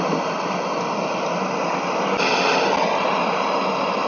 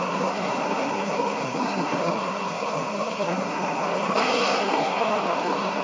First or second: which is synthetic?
second